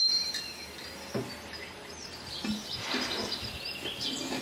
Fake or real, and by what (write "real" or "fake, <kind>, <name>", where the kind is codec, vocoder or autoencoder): real